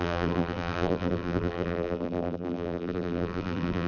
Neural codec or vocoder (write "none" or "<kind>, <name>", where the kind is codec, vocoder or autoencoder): vocoder, BigVGAN v2